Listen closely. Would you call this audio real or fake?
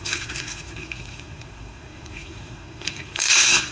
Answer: fake